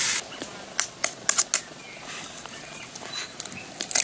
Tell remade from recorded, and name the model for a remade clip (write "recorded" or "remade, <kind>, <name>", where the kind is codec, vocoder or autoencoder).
recorded